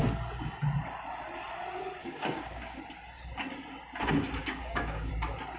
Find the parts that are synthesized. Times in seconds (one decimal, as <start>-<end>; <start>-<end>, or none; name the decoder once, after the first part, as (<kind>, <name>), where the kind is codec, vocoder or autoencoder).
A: 2.0-2.8 (codec, DAC); 4.4-5.1